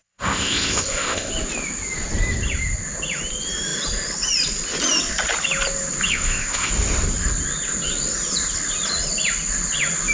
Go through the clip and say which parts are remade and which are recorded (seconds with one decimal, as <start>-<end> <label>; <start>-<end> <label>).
0.0-1.3 remade; 1.3-6.1 recorded; 6.1-6.7 remade; 6.7-10.1 recorded